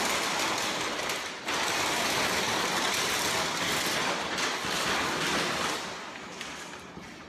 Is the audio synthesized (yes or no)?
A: no